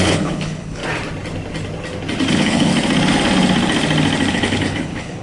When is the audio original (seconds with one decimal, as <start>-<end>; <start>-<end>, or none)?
0.8-2.3; 2.7-4.3